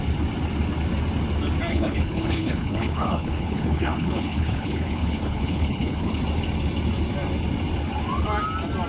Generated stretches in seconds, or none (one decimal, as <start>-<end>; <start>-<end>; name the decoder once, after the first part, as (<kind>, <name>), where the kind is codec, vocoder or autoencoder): 1.7-6.2 (codec, HILCodec)